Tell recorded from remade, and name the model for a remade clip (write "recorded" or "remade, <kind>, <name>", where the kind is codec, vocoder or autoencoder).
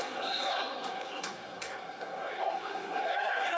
remade, codec, SNAC